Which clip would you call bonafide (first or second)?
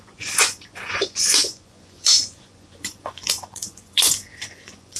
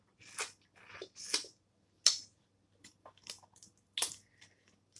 second